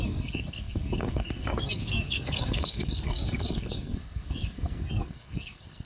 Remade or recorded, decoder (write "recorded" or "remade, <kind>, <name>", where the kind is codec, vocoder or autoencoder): remade, codec, SNAC